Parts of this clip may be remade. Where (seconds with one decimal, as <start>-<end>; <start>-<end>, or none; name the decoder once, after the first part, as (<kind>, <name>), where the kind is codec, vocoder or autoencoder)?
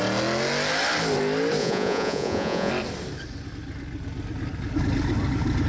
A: 1.6-2.7 (vocoder, Vocos)